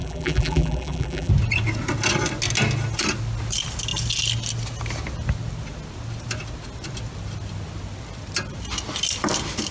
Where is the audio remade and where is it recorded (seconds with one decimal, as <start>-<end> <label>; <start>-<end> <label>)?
0.0-1.3 remade; 1.3-9.7 recorded